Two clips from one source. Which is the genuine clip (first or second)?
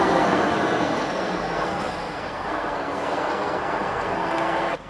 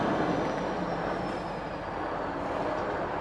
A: second